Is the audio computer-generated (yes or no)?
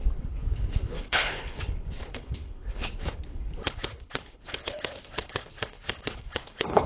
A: yes